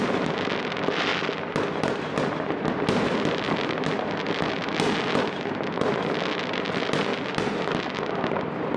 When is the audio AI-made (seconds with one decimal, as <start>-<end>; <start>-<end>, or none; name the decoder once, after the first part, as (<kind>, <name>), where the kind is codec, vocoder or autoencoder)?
none